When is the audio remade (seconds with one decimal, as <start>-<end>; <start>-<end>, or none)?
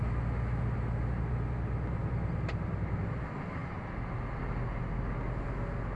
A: none